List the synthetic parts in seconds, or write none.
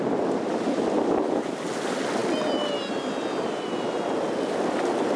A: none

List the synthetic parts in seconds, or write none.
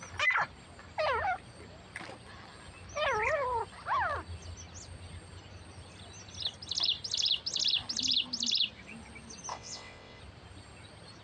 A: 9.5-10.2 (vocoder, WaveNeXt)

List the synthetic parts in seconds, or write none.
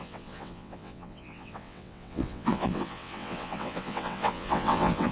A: 0.0-5.1 (vocoder, WaveNeXt)